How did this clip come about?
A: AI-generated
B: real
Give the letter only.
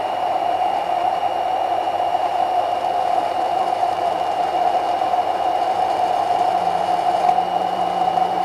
A